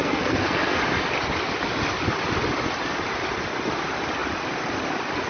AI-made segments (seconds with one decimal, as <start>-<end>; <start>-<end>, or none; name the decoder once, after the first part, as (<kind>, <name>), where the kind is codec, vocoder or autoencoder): 0.0-0.8 (codec, SNAC)